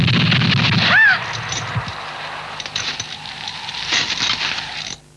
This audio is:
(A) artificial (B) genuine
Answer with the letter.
B